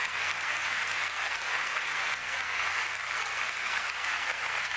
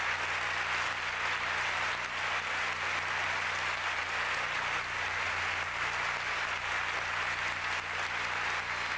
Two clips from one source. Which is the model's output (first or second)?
first